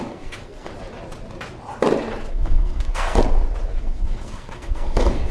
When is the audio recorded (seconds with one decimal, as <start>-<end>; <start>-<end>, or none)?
0.7-2.3; 3.2-3.8